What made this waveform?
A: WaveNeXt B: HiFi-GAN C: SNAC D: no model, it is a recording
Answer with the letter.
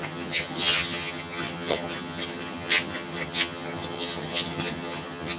B